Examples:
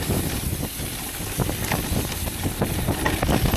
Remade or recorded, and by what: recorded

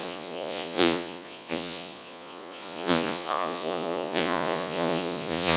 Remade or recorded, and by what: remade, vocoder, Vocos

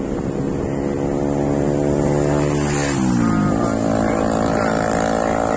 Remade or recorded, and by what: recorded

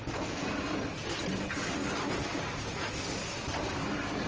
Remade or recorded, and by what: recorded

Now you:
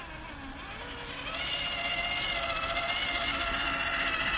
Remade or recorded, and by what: recorded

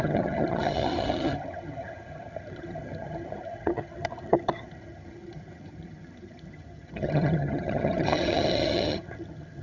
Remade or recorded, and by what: remade, vocoder, HiFi-GAN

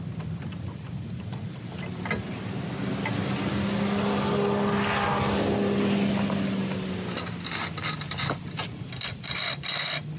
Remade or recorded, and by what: recorded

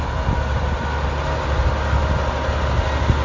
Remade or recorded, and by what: recorded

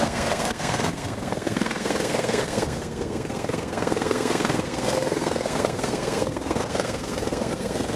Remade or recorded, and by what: remade, codec, SNAC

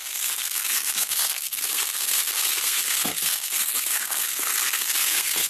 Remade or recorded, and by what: remade, codec, SNAC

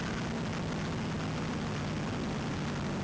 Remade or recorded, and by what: recorded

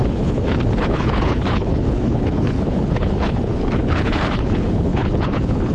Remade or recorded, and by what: remade, codec, HILCodec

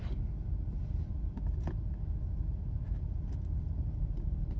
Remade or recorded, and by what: recorded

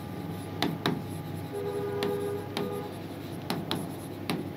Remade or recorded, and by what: recorded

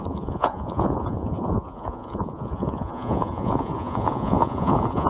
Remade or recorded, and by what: remade, vocoder, Vocos